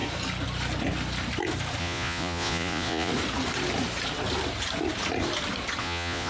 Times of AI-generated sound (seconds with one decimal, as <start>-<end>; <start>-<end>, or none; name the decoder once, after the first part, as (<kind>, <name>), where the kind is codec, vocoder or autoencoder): 1.8-3.1 (vocoder, Vocos); 5.8-6.3

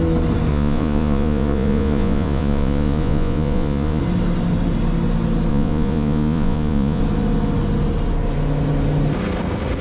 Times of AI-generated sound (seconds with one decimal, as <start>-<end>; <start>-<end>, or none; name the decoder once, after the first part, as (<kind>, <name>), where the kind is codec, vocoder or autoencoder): 0.5-4.0 (vocoder, Vocos); 5.5-7.0